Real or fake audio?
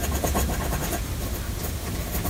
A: real